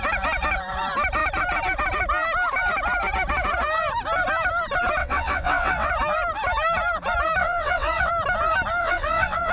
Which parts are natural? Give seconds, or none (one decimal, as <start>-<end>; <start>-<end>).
0.0-5.0; 5.9-7.4; 8.1-8.8